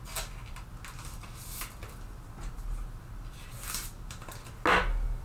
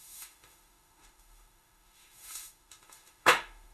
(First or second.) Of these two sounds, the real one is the first